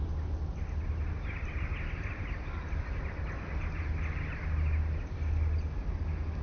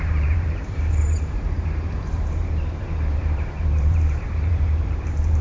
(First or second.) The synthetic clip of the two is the second